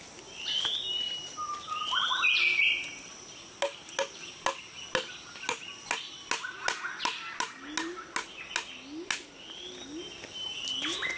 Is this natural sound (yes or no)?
yes